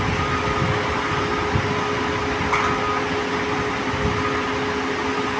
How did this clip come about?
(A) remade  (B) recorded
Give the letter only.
B